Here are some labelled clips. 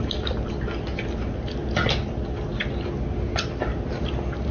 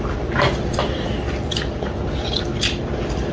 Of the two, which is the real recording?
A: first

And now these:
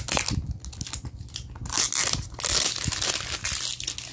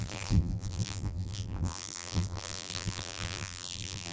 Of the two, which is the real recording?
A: first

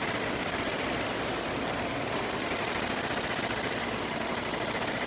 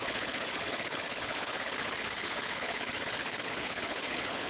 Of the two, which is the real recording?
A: first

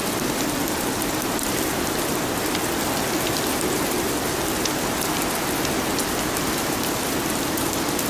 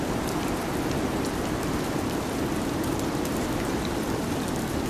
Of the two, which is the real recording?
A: first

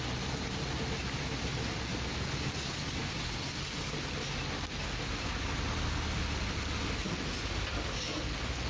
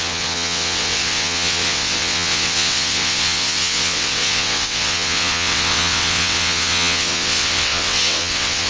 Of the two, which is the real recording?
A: first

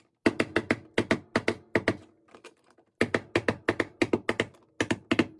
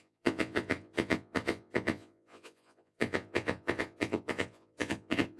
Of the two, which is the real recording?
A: first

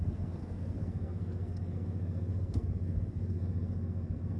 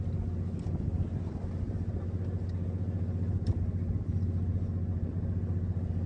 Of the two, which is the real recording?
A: second